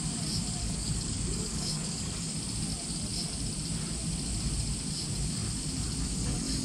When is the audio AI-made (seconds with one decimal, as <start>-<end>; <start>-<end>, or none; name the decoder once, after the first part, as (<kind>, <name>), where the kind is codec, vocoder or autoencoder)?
0.6-2.2 (codec, DAC)